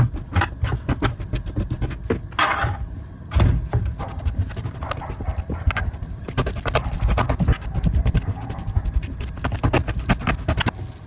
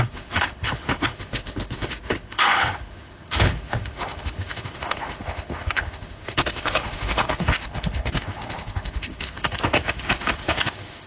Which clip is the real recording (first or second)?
first